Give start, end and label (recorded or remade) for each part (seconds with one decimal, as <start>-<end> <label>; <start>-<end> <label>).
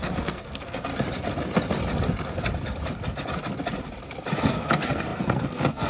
0.0-0.9 remade; 0.9-4.4 recorded; 4.4-5.9 remade